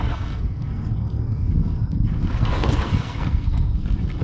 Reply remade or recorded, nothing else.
remade